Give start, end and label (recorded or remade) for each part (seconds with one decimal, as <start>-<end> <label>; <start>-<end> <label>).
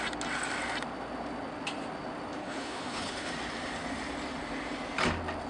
0.0-2.4 recorded; 2.4-3.3 remade; 3.3-5.5 recorded